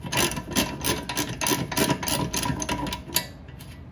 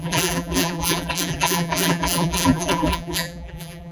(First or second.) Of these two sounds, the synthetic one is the second